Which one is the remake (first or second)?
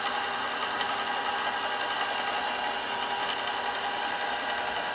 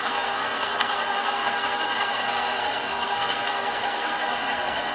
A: second